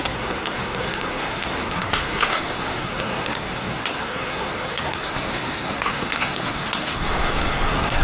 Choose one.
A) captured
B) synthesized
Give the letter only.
B